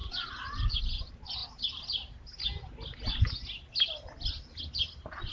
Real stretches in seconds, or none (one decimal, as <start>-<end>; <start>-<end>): 0.8-5.3